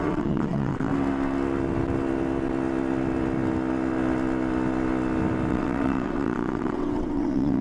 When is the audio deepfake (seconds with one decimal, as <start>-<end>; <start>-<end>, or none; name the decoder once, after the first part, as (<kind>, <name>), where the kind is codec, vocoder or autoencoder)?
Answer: 0.0-0.9 (vocoder, WaveNeXt); 5.5-7.6